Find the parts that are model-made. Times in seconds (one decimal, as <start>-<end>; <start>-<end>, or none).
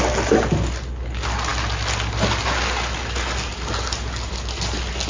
none